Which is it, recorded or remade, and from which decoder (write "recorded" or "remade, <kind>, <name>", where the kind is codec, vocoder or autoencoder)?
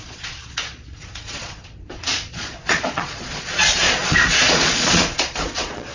remade, vocoder, Vocos